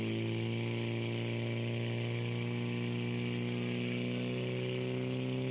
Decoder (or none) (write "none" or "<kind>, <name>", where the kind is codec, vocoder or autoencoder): none